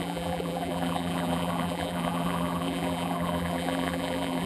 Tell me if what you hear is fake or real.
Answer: fake